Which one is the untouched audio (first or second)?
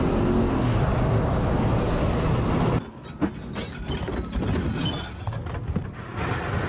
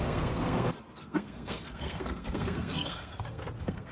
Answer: first